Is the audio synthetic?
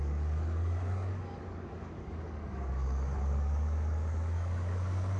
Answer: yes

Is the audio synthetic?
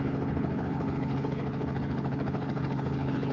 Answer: yes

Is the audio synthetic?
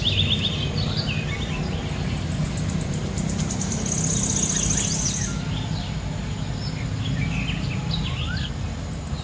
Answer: no